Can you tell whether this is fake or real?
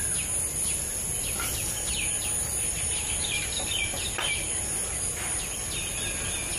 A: real